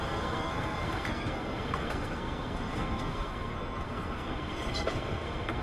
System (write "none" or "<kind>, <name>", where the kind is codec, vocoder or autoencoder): codec, SNAC